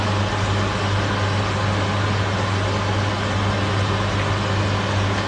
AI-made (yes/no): no